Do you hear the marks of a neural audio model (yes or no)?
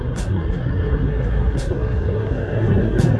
yes